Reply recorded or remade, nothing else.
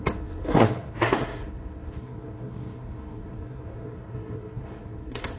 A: remade